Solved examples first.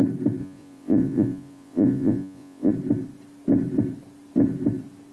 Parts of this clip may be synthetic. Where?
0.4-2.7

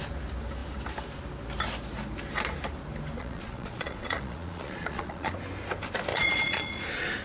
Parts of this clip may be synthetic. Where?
3.2-5.3; 6.1-6.8